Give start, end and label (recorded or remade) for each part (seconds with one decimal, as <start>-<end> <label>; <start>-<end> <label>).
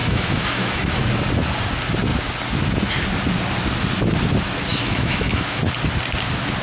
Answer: 0.0-1.0 remade; 1.0-4.7 recorded; 4.7-5.6 remade; 5.6-6.6 recorded